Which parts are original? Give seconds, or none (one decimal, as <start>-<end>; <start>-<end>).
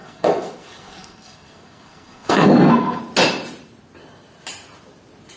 3.0-5.4